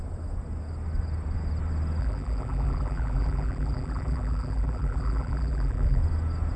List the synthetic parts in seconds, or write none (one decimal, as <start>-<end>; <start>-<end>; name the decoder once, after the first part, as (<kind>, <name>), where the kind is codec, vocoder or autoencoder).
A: 2.0-6.0 (vocoder, BigVGAN v2)